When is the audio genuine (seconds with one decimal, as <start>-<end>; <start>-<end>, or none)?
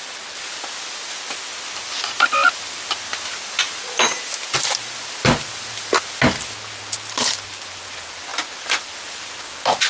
0.0-8.3; 8.9-9.9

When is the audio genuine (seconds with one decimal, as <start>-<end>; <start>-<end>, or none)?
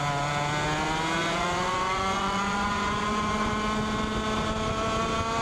0.0-1.2; 3.5-5.4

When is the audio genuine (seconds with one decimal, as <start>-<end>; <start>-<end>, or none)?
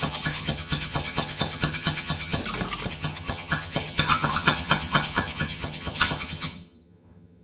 2.4-2.9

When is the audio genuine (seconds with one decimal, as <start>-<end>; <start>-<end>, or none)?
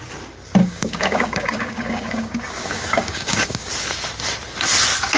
0.0-0.6; 3.7-5.2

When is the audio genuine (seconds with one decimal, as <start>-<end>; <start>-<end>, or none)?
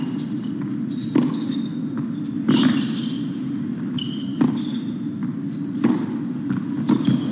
0.0-7.3